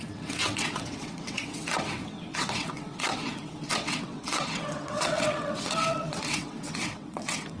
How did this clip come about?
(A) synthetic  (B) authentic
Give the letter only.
A